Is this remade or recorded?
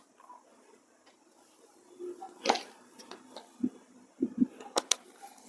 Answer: recorded